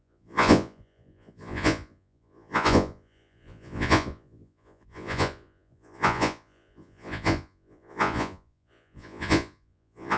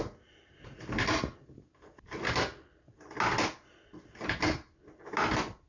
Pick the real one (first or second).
second